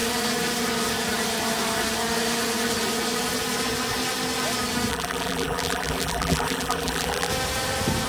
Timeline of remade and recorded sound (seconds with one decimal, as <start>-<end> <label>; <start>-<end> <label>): 0.0-4.9 recorded; 4.9-7.3 remade; 7.3-8.1 recorded